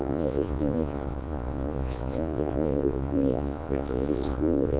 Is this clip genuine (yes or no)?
no